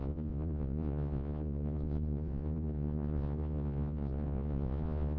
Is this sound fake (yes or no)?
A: yes